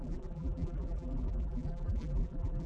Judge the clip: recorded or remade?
remade